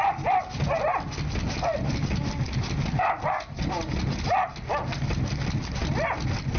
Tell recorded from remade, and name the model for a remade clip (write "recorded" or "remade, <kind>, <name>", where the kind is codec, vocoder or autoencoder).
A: recorded